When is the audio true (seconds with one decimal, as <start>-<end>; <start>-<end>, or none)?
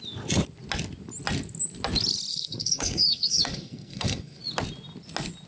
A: 0.0-2.3; 4.4-5.5